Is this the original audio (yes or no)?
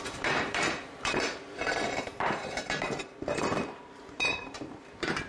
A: no